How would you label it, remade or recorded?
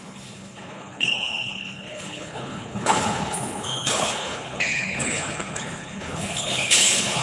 remade